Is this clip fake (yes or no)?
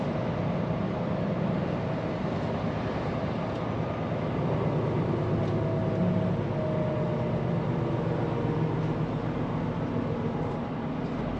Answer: no